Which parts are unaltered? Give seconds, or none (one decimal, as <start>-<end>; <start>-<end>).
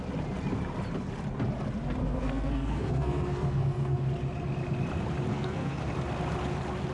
0.0-2.0; 4.0-5.3; 5.8-6.9